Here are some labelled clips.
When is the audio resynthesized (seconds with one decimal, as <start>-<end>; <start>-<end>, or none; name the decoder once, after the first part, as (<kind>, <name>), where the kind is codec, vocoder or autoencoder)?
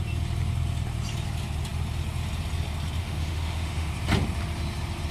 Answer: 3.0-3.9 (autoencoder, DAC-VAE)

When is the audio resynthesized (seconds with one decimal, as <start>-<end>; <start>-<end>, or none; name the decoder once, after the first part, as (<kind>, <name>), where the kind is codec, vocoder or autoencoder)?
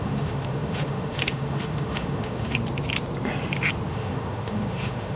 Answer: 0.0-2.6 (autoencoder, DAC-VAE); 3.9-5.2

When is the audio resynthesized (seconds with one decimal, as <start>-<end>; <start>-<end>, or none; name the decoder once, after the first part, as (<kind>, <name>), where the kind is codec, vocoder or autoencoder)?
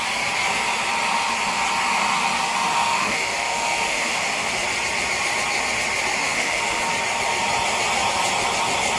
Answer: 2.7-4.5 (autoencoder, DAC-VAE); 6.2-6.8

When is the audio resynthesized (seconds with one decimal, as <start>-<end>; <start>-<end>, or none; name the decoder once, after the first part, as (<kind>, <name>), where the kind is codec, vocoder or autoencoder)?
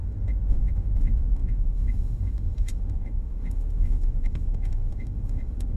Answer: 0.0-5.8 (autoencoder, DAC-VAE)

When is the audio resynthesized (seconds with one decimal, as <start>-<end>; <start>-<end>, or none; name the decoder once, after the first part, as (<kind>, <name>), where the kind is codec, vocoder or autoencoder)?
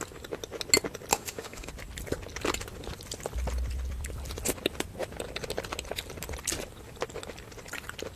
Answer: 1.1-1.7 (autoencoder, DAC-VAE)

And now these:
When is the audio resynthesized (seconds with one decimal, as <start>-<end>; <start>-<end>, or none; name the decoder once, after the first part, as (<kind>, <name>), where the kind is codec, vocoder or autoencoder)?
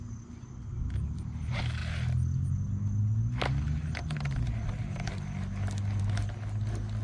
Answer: none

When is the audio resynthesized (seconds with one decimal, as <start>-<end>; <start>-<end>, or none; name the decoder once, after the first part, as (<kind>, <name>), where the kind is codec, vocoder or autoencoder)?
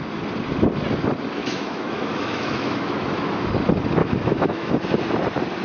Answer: 1.4-3.5 (autoencoder, DAC-VAE); 4.0-4.7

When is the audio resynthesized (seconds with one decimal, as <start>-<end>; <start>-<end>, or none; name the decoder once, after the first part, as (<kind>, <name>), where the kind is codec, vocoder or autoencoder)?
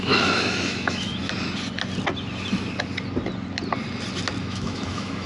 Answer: 0.0-1.2 (autoencoder, DAC-VAE); 4.4-5.3